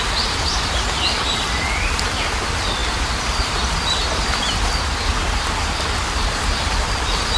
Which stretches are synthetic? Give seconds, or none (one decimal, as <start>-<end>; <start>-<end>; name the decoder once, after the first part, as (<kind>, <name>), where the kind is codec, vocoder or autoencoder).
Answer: 2.8-3.6 (vocoder, BigVGAN v2); 6.0-7.4